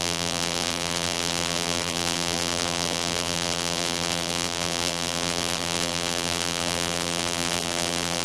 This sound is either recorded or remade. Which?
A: remade